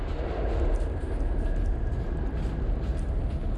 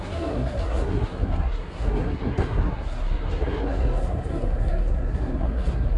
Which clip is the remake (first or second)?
second